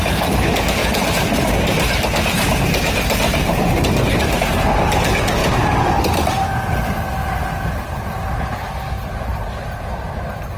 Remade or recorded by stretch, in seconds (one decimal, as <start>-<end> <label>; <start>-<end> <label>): 0.0-0.8 recorded; 0.8-2.4 remade; 2.4-3.3 recorded; 3.3-4.4 remade; 4.4-10.6 recorded